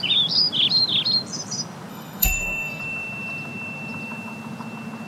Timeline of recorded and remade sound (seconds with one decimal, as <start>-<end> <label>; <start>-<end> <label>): 0.0-1.9 recorded; 1.9-2.8 remade; 2.8-5.1 recorded